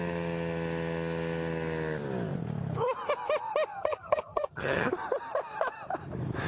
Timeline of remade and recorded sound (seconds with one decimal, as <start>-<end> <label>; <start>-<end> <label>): 0.0-3.8 recorded; 3.8-4.9 remade; 4.9-6.5 recorded

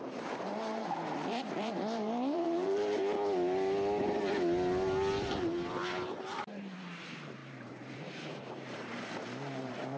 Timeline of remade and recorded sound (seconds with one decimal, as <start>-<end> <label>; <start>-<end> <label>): 0.0-3.0 remade; 3.0-5.7 recorded; 5.7-8.9 remade; 8.9-9.5 recorded; 9.5-10.0 remade

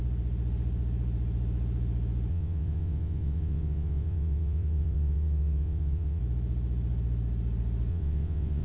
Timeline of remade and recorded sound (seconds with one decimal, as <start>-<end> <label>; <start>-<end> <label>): 0.0-2.3 recorded; 2.3-6.2 remade; 6.2-7.9 recorded; 7.9-8.6 remade

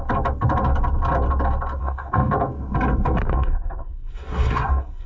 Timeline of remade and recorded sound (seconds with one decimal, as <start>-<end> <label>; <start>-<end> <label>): 0.0-1.8 recorded; 1.8-2.3 remade; 2.3-3.3 recorded; 3.3-5.1 remade

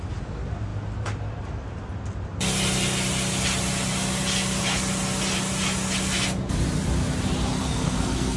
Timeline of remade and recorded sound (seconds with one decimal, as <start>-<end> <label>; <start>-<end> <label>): 0.0-7.6 recorded; 7.6-8.4 remade

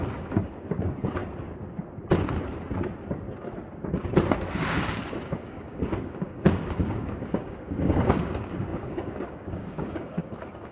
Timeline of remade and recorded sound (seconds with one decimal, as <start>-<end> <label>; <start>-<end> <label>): 0.0-1.2 remade; 1.2-4.6 recorded; 4.6-10.7 remade

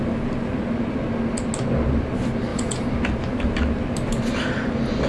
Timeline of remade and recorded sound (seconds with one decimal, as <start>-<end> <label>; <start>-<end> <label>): 0.0-5.1 recorded

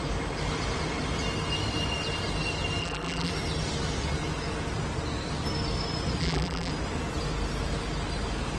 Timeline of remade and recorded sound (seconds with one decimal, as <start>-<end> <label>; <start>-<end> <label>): 0.0-2.8 recorded; 2.8-3.3 remade; 3.3-6.2 recorded; 6.2-6.7 remade; 6.7-8.6 recorded